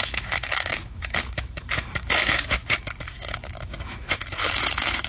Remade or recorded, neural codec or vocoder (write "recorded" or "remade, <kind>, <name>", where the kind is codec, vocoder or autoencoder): remade, autoencoder, DAC-VAE